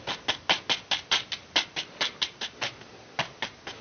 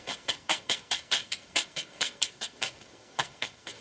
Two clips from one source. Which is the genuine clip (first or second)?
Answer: first